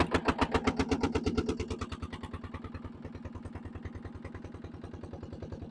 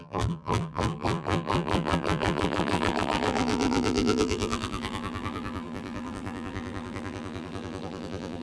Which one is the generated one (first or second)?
second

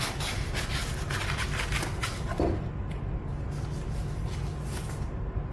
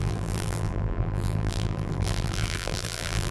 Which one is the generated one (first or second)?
second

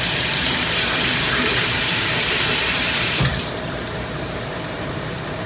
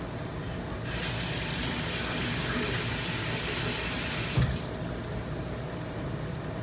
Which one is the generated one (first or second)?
first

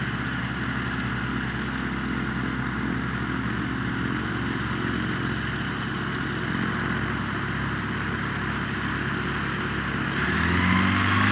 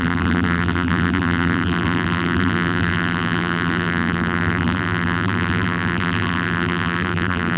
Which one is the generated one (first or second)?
second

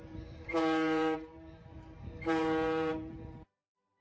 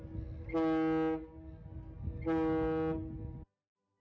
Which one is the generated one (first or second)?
first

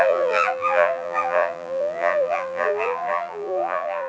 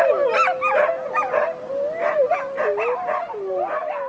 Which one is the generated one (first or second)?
first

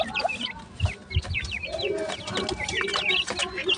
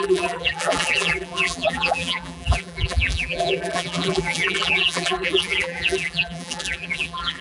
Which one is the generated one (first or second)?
second